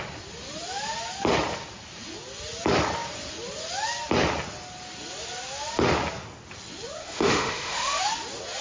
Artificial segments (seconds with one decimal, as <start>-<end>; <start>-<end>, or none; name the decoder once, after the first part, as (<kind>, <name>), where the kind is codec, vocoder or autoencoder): 7.0-8.0 (autoencoder, DAC-VAE)